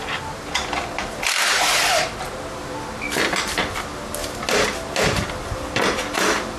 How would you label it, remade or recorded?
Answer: recorded